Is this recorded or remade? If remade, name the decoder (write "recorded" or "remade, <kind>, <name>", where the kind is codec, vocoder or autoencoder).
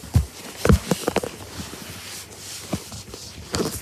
recorded